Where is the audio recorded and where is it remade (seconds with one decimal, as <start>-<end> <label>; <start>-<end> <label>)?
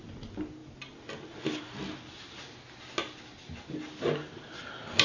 0.0-5.0 recorded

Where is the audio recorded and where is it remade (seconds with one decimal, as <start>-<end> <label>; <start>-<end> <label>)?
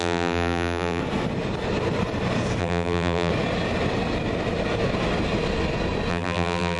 0.0-1.0 remade; 1.0-2.6 recorded; 2.6-3.3 remade; 3.3-6.1 recorded; 6.1-6.8 remade